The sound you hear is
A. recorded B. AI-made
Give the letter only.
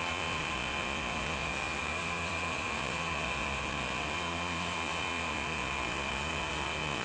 B